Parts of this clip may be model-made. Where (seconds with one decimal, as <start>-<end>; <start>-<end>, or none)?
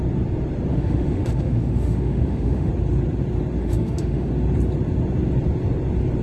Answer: 0.7-2.7; 3.6-4.3